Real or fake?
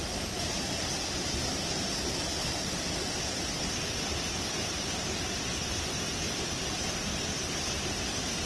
real